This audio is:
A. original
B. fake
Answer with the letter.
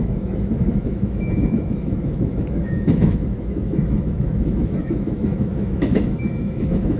B